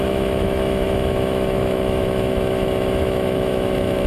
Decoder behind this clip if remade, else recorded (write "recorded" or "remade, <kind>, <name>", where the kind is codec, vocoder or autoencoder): remade, autoencoder, DAC-VAE